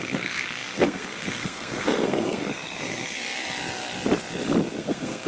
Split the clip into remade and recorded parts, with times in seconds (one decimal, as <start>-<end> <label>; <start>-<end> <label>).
0.0-3.2 remade; 3.2-4.8 recorded; 4.8-5.3 remade